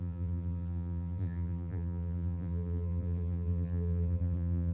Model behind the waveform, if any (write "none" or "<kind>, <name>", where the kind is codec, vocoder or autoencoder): vocoder, BigVGAN v2